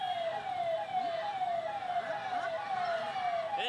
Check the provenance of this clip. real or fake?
real